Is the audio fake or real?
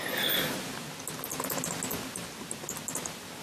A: real